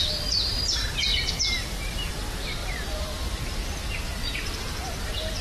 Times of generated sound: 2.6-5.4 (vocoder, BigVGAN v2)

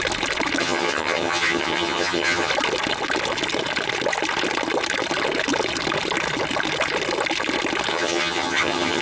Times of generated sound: 0.6-2.5 (vocoder, HiFi-GAN); 7.9-9.0

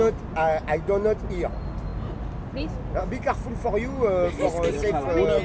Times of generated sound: none

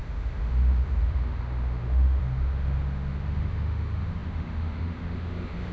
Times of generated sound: 0.0-5.7 (autoencoder, DAC-VAE)

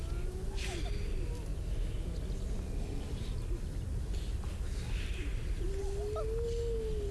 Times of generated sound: none

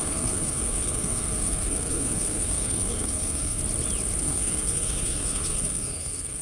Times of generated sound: 0.0-3.6 (codec, SNAC); 4.2-6.4

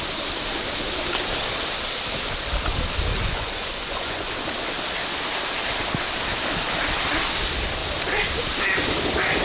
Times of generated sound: 3.1-4.3 (vocoder, Vocos)